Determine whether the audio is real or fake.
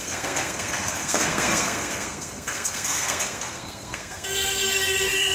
fake